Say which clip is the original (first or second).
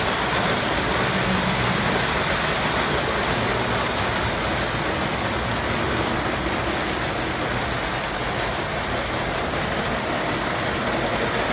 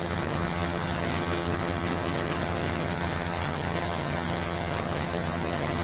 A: first